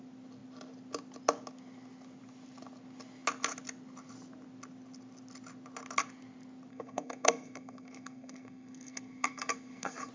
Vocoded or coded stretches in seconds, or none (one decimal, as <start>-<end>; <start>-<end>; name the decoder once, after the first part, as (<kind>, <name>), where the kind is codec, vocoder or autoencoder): 6.7-10.1 (codec, SNAC)